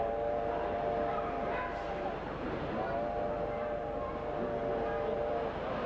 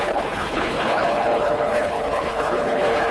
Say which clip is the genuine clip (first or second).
first